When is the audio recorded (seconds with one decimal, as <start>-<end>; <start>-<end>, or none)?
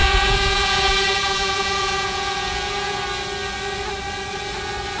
3.0-5.0